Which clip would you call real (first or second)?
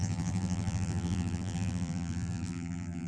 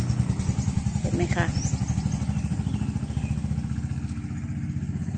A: second